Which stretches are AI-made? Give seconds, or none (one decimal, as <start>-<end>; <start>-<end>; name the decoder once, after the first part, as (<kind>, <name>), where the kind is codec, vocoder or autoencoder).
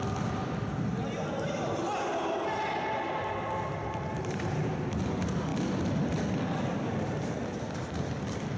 4.1-4.7 (vocoder, BigVGAN v2)